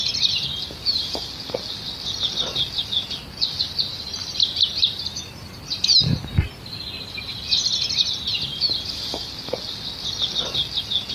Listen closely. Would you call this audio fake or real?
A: real